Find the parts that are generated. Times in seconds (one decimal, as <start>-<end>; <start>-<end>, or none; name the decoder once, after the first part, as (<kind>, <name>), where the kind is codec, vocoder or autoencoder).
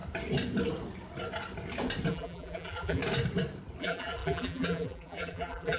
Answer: 2.1-3.0 (vocoder, BigVGAN v2); 3.8-5.8